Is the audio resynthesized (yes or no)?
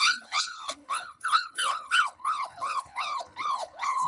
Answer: yes